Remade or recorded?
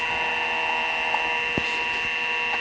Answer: recorded